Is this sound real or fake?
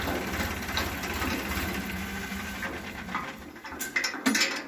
real